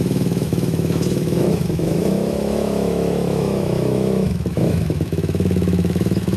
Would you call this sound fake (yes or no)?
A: yes